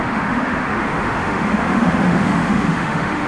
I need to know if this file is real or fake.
fake